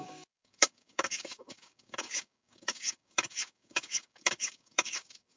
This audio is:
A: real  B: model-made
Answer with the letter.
B